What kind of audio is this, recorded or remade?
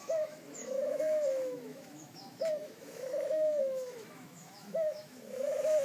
remade